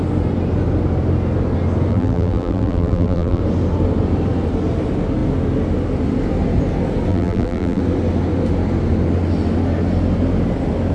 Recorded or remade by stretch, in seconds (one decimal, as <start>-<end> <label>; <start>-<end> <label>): 0.0-1.9 recorded; 1.9-3.4 remade; 3.4-7.1 recorded; 7.1-7.8 remade; 7.8-10.9 recorded